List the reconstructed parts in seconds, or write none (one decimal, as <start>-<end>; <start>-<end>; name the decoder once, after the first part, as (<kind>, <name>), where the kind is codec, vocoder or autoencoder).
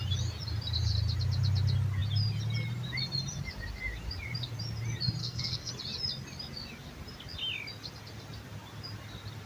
5.2-5.7 (codec, SNAC)